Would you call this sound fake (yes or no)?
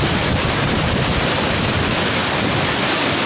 yes